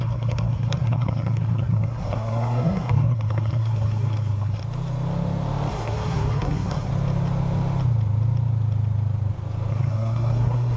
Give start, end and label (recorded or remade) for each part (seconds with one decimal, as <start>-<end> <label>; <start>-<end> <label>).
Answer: 0.0-4.6 remade; 4.6-5.7 recorded; 5.7-6.9 remade; 6.9-9.7 recorded; 9.7-10.8 remade